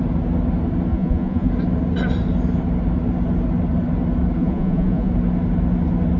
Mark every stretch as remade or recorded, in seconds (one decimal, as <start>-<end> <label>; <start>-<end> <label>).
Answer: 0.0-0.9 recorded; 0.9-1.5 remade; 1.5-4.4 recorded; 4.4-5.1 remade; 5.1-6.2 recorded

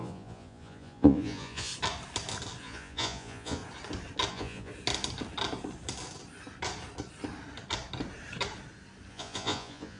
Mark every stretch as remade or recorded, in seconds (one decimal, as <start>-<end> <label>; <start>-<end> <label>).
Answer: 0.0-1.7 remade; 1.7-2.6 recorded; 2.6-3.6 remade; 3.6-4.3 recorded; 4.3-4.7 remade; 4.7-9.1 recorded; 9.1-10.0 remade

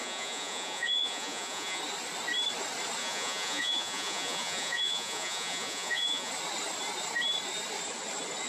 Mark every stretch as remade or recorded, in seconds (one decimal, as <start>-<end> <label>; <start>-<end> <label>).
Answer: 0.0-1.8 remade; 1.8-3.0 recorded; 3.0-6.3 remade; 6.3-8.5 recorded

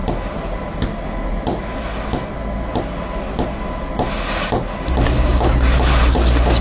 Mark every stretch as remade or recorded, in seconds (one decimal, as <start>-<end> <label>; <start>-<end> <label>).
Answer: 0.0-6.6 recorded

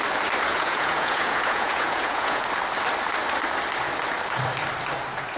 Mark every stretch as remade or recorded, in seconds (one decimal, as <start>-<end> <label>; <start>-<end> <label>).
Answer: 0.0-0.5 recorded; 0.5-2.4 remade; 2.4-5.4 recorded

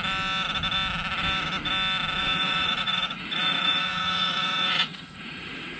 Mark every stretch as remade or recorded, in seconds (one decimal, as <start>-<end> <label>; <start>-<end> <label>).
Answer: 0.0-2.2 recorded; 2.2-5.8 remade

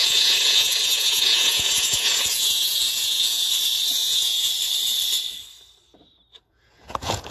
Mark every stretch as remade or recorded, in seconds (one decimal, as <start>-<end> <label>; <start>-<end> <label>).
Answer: 0.0-3.5 remade; 3.5-4.0 recorded; 4.0-4.5 remade; 4.5-6.3 recorded; 6.3-7.3 remade